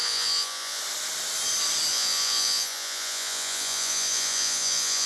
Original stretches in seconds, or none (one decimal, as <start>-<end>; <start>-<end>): 0.8-1.9